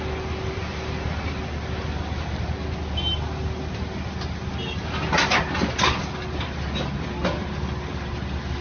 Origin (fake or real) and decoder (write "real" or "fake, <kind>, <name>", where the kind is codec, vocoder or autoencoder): real